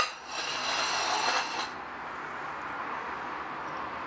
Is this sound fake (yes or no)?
no